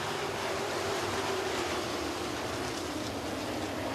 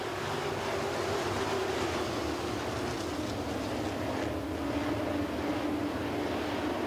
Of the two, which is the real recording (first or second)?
second